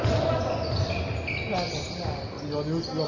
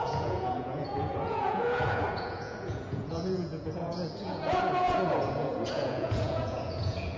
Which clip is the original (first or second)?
first